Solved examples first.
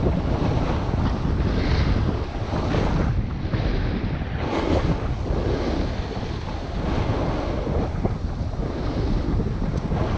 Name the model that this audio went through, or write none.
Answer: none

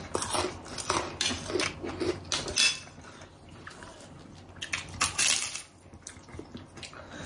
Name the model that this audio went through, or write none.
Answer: none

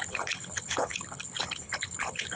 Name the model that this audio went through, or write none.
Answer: codec, HILCodec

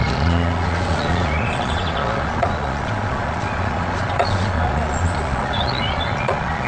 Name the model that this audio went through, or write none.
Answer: vocoder, Vocos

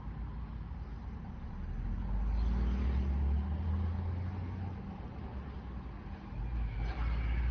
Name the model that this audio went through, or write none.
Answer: none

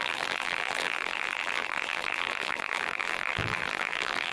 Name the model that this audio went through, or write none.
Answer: vocoder, BigVGAN v2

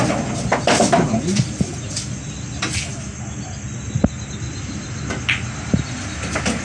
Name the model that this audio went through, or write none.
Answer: none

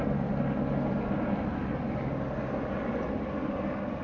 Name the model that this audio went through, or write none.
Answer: none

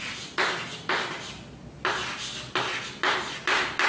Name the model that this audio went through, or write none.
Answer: none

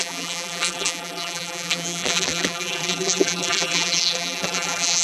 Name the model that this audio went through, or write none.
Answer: vocoder, BigVGAN v2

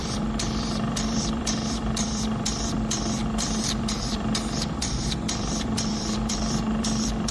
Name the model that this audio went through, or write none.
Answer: vocoder, BigVGAN v2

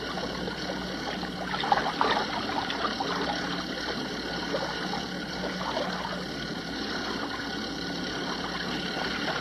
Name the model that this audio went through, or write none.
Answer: none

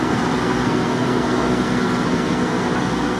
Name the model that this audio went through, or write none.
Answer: codec, SNAC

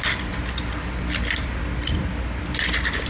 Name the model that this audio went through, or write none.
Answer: none